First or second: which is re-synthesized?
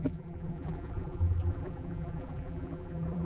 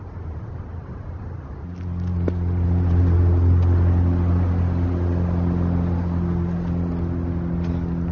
first